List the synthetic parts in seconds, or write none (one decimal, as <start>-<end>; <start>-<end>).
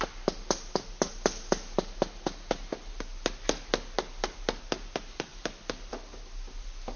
none